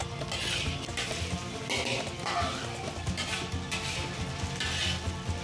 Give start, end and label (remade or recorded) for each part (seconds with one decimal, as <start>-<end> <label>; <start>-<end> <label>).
0.0-5.4 recorded